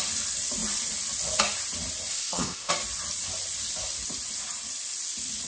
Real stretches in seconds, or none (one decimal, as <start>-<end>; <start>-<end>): 0.0-2.1; 2.7-5.5